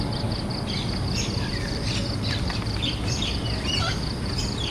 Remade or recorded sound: recorded